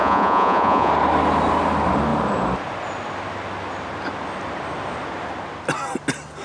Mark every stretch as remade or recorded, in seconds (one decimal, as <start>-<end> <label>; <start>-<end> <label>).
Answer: 0.0-0.9 remade; 0.9-6.4 recorded